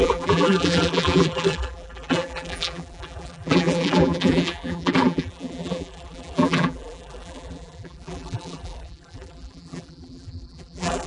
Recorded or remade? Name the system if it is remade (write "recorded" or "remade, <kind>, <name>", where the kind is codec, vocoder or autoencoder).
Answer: remade, vocoder, BigVGAN v2